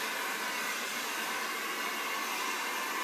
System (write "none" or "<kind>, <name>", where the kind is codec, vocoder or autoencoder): none